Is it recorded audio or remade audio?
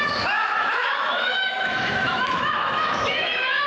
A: remade